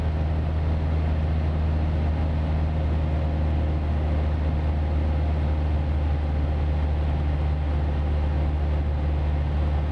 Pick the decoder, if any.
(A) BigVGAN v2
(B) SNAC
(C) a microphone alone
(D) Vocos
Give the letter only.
C